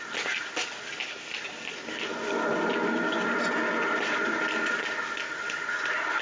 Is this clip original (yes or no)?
yes